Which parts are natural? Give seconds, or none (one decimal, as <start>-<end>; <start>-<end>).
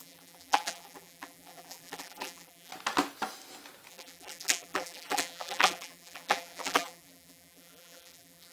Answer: 2.7-3.9